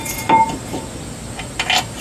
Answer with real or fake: real